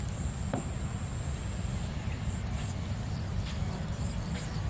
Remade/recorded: recorded